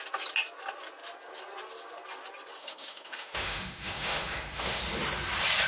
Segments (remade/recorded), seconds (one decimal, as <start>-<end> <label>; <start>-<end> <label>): 0.0-2.6 recorded; 2.6-4.8 remade; 4.8-5.7 recorded